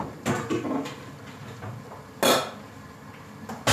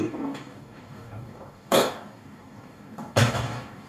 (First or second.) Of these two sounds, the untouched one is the first